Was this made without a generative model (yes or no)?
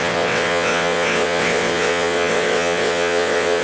no